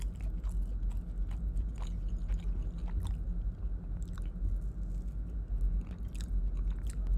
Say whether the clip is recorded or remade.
recorded